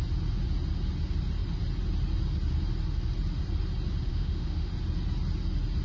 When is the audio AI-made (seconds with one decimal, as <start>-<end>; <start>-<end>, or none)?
4.1-4.7